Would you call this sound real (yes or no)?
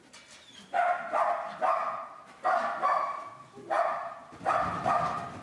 yes